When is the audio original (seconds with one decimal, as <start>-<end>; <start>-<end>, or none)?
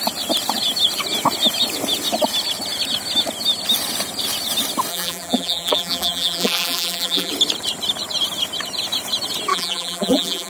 0.0-4.9; 7.3-9.5